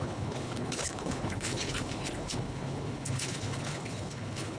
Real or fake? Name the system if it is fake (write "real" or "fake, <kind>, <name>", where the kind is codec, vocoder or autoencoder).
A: fake, codec, HILCodec